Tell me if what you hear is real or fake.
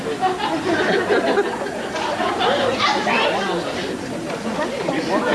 real